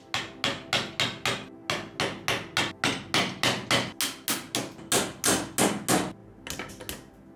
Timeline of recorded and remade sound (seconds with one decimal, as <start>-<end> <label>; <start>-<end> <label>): 0.0-7.4 recorded